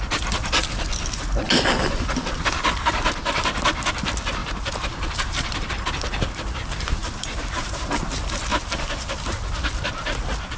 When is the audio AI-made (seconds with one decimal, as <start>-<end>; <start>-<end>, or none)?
4.4-5.7; 7.0-8.0; 8.5-9.2